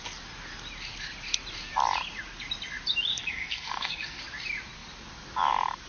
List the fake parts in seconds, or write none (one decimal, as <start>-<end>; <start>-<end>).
3.1-4.2